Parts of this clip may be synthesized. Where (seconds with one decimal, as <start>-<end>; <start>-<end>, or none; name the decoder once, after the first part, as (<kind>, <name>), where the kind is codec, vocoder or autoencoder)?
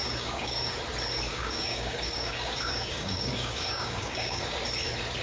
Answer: 0.0-0.6 (codec, DAC); 1.3-4.4